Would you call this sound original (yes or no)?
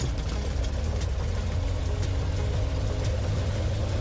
yes